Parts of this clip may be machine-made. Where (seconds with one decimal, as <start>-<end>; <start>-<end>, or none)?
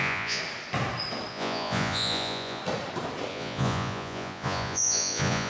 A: 0.0-0.4; 1.3-2.6; 3.3-5.5